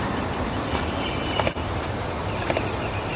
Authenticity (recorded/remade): remade